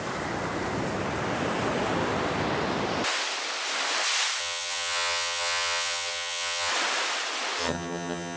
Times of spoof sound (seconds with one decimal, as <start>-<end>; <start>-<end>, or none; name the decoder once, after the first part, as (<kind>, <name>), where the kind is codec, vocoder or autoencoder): 4.4-6.7 (vocoder, HiFi-GAN); 7.6-8.4